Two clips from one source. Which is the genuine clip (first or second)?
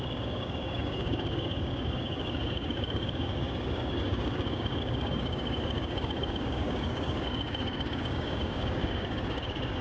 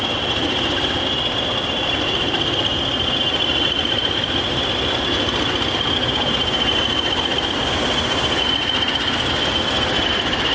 second